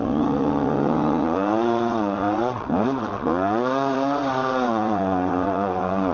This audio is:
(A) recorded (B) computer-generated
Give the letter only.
B